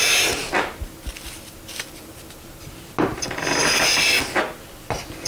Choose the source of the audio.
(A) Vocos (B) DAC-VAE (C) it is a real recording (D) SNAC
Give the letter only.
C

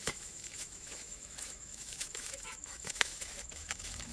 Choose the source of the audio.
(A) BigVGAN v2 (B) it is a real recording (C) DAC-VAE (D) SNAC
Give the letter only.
C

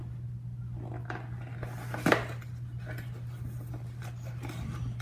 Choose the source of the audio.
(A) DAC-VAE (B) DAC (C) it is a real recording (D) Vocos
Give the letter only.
C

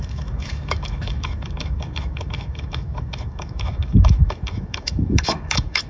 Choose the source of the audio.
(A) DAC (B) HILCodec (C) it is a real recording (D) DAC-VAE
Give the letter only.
D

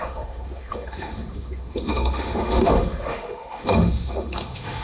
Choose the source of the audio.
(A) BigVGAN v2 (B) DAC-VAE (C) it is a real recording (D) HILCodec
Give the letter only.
B